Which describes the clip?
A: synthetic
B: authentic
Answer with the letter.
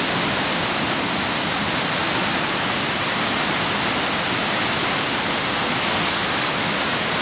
B